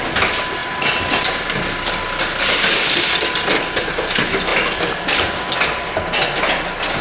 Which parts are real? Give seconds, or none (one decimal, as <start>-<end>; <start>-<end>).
0.0-7.0